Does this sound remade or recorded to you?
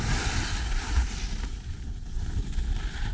recorded